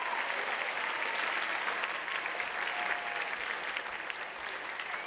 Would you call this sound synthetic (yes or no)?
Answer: no